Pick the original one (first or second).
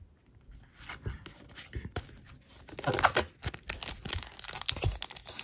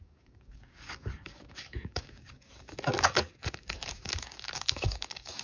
first